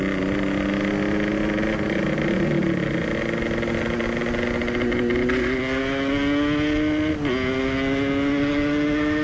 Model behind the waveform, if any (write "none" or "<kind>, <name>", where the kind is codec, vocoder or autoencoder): none